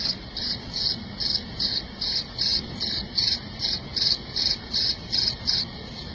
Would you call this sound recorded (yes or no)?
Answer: no